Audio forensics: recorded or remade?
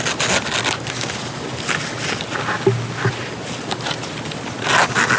recorded